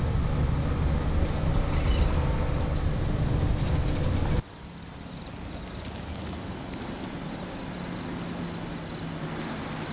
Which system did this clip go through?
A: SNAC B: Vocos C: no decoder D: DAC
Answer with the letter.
C